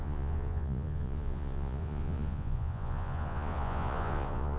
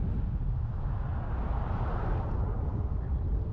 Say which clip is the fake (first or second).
first